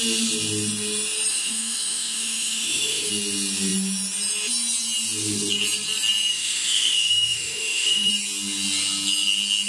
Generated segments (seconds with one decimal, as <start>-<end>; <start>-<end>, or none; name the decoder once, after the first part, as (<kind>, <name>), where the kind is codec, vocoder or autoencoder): 1.3-3.1 (autoencoder, DAC-VAE); 6.3-8.1